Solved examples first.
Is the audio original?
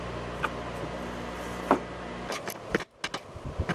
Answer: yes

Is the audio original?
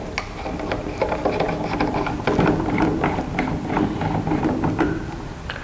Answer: yes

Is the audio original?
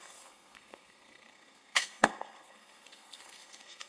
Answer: no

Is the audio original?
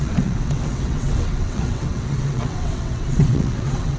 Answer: no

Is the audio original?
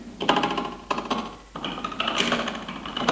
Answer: yes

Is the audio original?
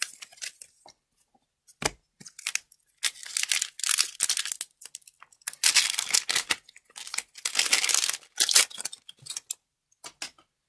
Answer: yes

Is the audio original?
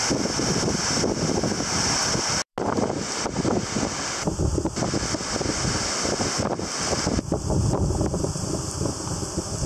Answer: yes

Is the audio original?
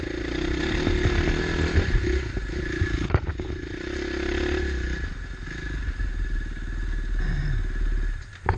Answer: yes